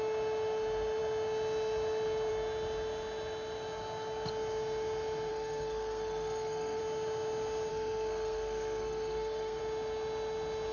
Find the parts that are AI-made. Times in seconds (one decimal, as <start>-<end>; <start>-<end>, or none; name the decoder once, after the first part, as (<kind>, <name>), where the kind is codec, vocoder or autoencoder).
5.3-6.8 (codec, SNAC); 7.7-9.6